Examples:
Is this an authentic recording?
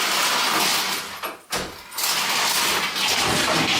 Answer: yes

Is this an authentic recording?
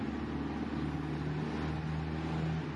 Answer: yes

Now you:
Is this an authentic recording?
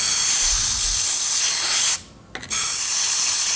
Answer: yes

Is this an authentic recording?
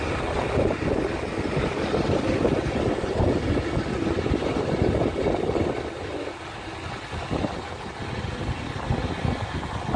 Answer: yes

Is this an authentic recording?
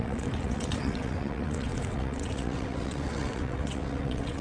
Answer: no